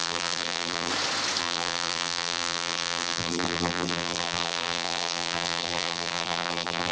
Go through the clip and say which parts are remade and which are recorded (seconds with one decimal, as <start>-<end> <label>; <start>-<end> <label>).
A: 0.0-0.9 remade; 0.9-1.4 recorded; 1.4-6.9 remade